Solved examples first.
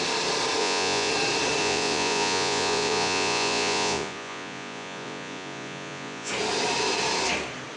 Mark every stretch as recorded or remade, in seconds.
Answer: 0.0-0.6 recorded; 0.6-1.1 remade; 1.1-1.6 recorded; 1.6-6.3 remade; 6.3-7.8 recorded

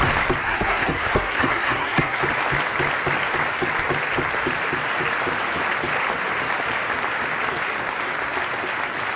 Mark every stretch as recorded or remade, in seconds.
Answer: 0.0-0.4 recorded; 0.4-2.2 remade; 2.2-9.2 recorded

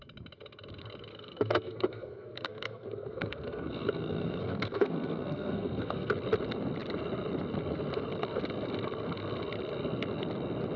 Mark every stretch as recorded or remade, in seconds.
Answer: 0.0-1.1 recorded; 1.1-6.1 remade; 6.1-10.8 recorded

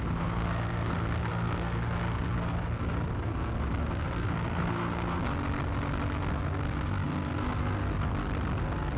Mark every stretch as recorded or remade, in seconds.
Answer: 0.0-5.2 remade; 5.2-6.3 recorded; 6.3-8.1 remade; 8.1-8.6 recorded; 8.6-9.0 remade

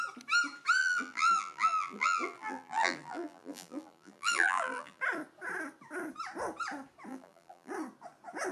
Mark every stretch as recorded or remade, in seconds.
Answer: 0.0-0.8 recorded; 0.8-5.0 remade; 5.0-7.1 recorded; 7.1-7.7 remade; 7.7-8.5 recorded